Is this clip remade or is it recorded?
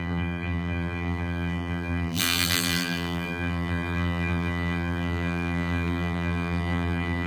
remade